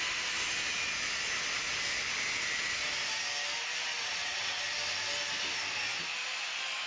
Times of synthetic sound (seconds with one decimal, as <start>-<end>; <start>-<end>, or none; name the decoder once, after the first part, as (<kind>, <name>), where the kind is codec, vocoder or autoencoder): 3.9-4.6 (vocoder, WaveNeXt)

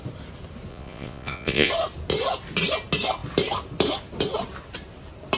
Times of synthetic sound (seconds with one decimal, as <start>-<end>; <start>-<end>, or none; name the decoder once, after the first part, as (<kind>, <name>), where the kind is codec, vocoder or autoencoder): 0.7-1.7 (vocoder, Vocos)

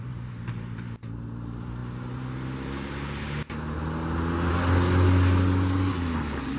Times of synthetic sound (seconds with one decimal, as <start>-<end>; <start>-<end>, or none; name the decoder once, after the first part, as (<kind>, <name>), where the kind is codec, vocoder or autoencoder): none

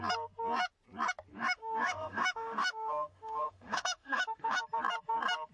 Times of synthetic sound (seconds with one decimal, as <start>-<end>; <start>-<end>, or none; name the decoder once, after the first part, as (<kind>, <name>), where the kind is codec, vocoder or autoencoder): 1.3-4.6 (autoencoder, DAC-VAE)

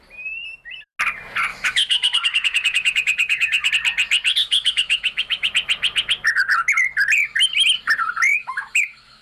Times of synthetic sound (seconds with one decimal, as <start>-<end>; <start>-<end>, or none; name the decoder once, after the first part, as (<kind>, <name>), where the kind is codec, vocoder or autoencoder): 1.5-3.7 (autoencoder, DAC-VAE); 4.4-5.5; 8.3-9.2

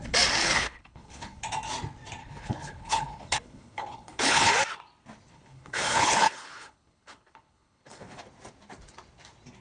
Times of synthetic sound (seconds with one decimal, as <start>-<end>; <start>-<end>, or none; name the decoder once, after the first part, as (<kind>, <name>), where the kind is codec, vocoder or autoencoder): 0.4-1.4 (codec, HILCodec); 2.2-4.5; 5.3-8.2

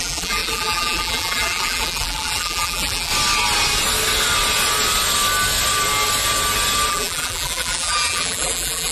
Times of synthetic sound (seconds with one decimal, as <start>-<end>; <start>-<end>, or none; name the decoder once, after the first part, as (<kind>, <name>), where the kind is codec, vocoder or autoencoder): 0.0-3.1 (vocoder, BigVGAN v2); 6.9-8.9

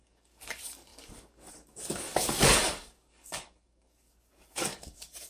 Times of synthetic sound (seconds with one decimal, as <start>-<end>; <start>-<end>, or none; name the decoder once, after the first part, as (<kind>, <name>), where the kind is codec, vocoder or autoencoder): 0.0-5.3 (codec, DAC)